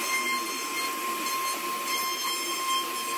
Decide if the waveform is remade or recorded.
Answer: recorded